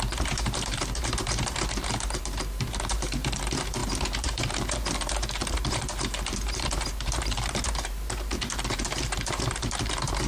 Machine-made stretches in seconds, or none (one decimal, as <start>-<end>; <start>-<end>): 0.0-10.3